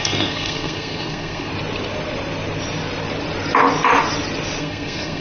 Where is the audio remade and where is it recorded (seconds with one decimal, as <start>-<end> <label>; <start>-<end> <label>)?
0.0-1.5 remade; 1.5-4.6 recorded; 4.6-5.2 remade